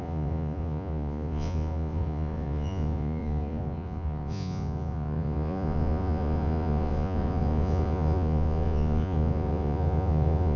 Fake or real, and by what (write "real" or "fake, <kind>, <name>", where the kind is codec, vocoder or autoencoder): fake, vocoder, Vocos